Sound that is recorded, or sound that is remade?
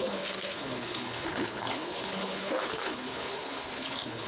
remade